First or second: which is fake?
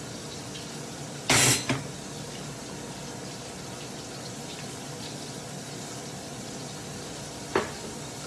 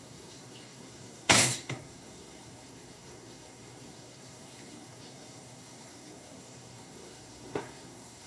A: second